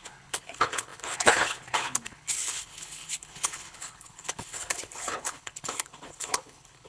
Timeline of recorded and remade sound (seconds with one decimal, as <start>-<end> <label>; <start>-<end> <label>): 0.0-6.9 remade